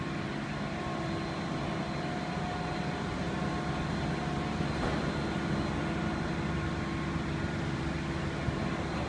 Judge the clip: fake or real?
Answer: real